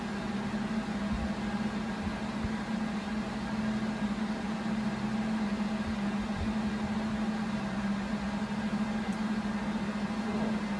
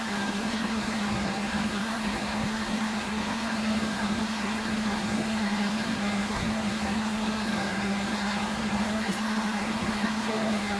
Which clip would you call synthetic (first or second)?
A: second